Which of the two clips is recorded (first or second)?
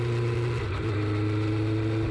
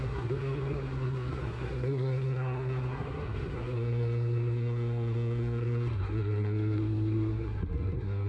first